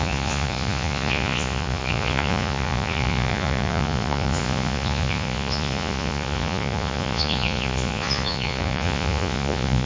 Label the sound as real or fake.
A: fake